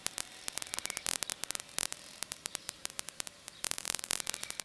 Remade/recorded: remade